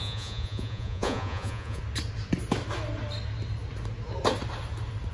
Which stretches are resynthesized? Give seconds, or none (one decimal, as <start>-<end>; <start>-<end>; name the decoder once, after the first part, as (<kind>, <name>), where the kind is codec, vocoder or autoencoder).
0.0-1.8 (vocoder, Vocos)